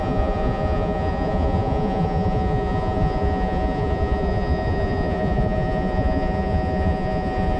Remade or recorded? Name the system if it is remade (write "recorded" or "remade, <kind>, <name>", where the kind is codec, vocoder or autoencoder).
remade, vocoder, Vocos